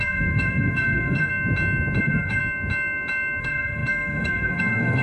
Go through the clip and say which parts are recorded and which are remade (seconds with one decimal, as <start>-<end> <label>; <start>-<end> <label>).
0.0-1.3 remade; 1.3-2.0 recorded; 2.0-2.4 remade; 2.4-3.4 recorded; 3.4-5.0 remade